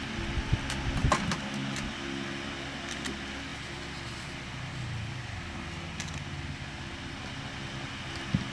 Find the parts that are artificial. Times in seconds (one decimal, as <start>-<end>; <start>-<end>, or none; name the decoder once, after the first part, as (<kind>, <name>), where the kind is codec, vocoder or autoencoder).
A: none